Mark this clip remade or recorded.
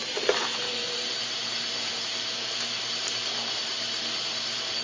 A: remade